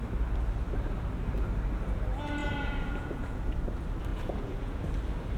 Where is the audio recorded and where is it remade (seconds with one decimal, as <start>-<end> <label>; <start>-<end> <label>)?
0.0-2.4 recorded; 2.4-3.5 remade; 3.5-4.1 recorded; 4.1-4.8 remade; 4.8-5.4 recorded